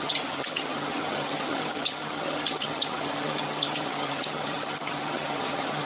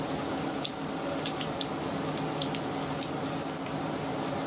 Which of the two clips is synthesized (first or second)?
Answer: first